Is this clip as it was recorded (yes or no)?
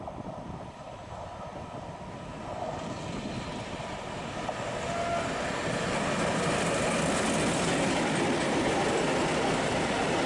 yes